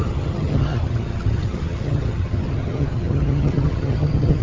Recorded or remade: remade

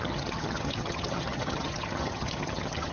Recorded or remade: remade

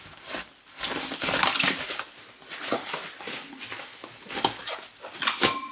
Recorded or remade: recorded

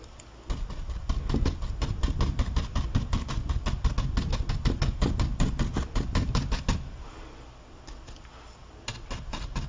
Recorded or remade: recorded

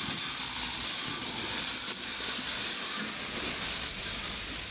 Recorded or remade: recorded